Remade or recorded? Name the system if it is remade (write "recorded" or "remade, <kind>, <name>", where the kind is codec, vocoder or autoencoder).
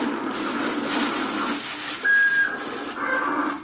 recorded